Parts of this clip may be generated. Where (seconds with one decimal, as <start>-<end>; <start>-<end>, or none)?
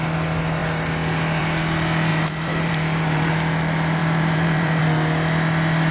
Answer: 2.1-3.3; 4.0-4.8